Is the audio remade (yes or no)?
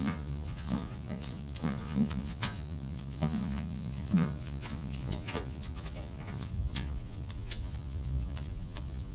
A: yes